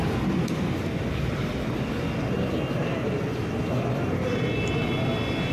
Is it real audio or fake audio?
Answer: real